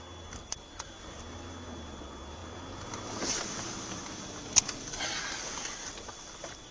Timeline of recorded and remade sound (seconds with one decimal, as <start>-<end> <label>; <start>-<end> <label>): 0.0-6.7 recorded